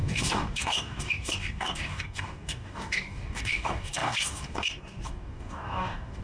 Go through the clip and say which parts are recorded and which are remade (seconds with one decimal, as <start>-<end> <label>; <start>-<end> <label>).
0.0-6.2 remade